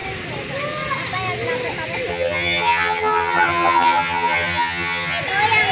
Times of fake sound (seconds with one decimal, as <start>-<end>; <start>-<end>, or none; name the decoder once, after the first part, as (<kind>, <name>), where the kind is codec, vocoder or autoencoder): 2.1-5.2 (vocoder, HiFi-GAN)

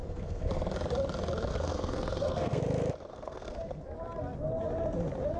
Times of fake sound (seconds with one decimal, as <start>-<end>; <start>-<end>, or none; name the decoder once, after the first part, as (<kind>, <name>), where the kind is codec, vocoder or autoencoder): 0.0-0.5 (codec, SNAC); 1.5-2.6; 3.1-3.6

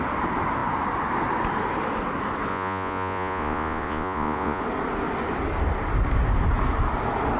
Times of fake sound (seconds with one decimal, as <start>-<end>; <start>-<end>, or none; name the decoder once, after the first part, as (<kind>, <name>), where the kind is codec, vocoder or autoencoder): 2.5-4.6 (vocoder, Vocos)

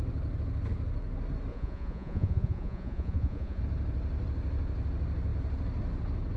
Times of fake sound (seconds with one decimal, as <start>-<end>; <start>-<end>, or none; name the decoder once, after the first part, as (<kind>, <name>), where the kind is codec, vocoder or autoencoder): 1.5-3.6 (vocoder, Vocos)

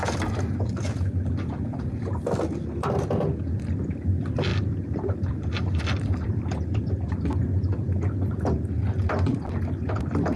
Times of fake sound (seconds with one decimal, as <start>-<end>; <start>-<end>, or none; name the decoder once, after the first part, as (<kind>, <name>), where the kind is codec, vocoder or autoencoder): 4.5-6.9 (vocoder, BigVGAN v2)

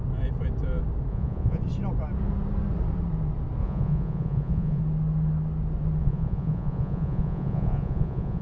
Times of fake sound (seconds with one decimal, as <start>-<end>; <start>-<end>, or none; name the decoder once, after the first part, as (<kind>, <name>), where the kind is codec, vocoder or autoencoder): 1.1-1.6 (vocoder, Vocos); 3.6-4.8; 6.0-8.4

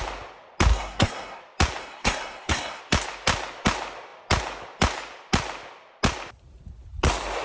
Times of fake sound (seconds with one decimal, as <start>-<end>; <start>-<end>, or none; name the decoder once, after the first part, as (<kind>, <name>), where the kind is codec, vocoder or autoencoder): 0.7-1.4 (codec, SNAC); 1.8-2.8